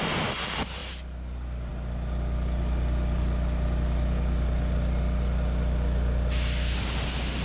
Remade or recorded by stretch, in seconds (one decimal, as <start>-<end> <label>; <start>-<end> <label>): 0.0-7.4 recorded